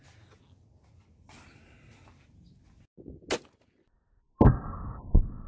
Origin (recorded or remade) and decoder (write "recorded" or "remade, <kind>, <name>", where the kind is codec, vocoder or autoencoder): recorded